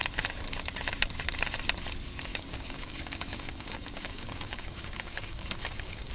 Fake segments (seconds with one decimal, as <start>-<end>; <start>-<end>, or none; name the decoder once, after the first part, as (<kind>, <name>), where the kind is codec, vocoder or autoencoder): 2.3-6.1 (codec, DAC)